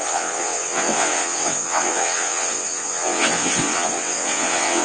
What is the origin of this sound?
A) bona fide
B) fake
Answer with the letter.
B